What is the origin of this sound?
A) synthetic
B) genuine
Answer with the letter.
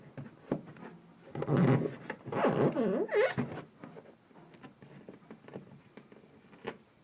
B